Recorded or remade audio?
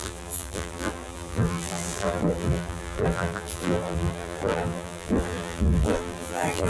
remade